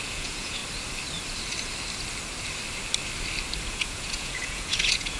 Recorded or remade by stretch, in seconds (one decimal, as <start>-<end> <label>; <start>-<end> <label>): 0.0-0.6 remade; 0.6-3.7 recorded; 3.7-5.2 remade